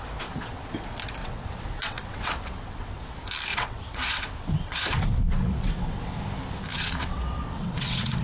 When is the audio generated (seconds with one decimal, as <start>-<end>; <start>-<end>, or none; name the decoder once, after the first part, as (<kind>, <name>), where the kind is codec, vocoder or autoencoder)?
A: 1.2-3.0 (vocoder, WaveNeXt); 3.5-6.2; 6.7-8.2